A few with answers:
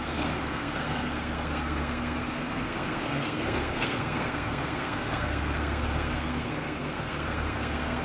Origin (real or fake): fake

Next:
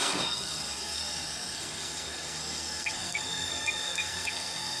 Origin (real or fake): fake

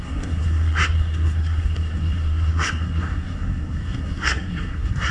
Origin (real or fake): fake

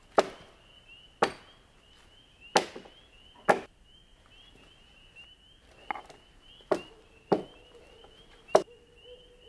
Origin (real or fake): real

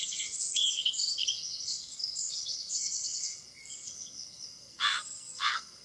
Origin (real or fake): fake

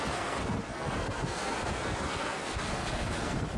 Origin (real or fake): fake